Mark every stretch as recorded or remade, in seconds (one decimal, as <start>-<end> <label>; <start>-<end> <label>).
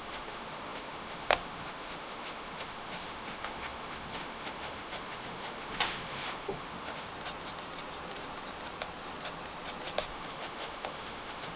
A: 0.0-7.1 remade; 7.1-10.1 recorded; 10.1-11.6 remade